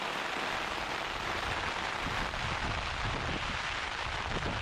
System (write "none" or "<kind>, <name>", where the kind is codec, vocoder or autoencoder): vocoder, BigVGAN v2